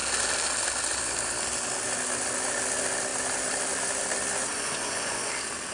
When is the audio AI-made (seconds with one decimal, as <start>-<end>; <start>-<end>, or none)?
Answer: 4.4-5.3